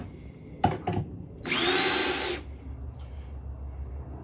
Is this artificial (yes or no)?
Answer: no